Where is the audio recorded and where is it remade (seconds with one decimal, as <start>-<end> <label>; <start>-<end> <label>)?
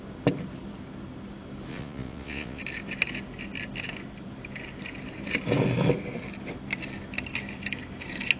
0.0-1.7 recorded; 1.7-2.6 remade; 2.6-8.4 recorded